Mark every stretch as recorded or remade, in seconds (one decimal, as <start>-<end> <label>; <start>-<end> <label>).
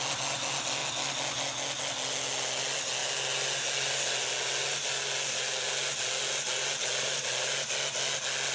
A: 0.0-8.5 recorded